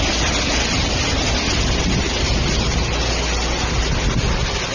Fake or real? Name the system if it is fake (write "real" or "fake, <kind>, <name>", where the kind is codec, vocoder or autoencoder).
real